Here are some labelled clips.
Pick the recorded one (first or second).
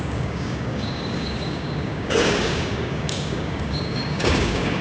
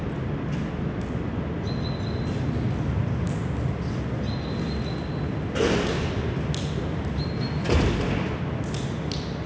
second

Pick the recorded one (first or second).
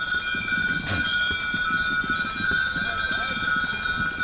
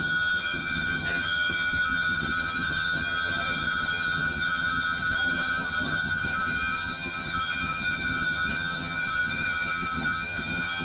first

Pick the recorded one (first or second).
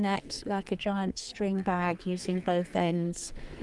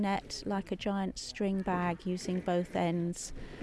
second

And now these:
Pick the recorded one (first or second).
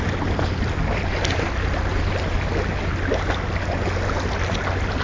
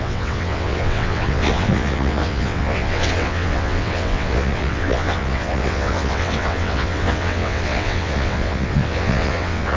first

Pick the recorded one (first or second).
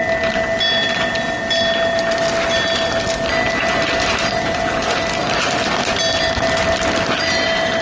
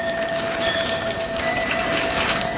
first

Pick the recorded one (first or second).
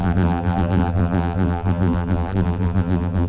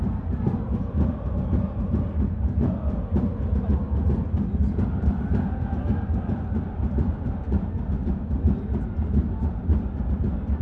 second